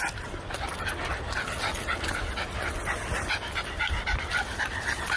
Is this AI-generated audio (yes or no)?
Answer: no